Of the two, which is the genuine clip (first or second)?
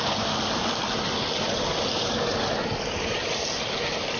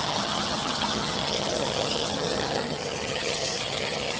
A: first